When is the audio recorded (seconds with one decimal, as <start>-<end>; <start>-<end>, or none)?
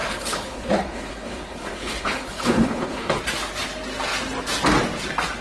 3.2-5.4